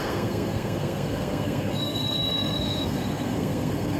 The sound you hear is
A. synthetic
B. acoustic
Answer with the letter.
A